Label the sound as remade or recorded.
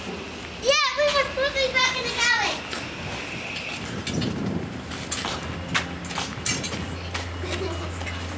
recorded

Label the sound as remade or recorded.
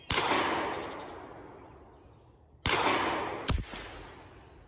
recorded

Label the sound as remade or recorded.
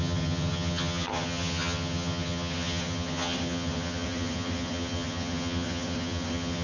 remade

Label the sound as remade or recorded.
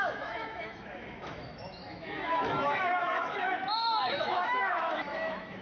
remade